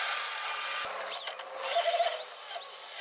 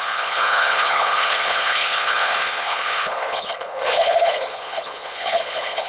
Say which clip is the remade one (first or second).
second